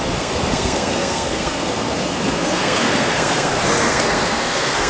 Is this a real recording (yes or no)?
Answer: no